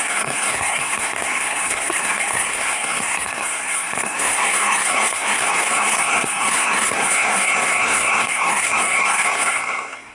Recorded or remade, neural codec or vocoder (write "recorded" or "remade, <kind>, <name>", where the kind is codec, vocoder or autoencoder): remade, codec, SNAC